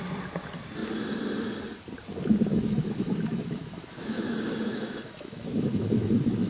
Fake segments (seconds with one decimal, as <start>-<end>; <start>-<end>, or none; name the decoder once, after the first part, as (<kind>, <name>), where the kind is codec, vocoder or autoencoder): 2.5-6.5 (autoencoder, DAC-VAE)